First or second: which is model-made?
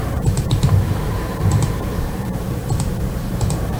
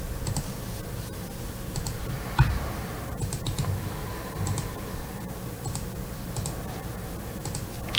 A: first